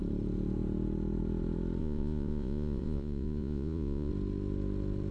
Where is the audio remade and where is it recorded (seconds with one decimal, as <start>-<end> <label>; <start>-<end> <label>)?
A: 0.0-1.8 recorded; 1.8-4.1 remade; 4.1-5.1 recorded